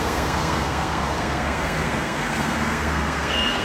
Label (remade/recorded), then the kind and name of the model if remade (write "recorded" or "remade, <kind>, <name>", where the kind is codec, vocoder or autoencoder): remade, codec, SNAC